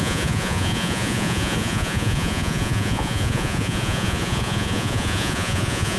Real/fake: fake